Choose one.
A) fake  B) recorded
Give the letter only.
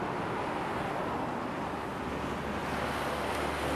B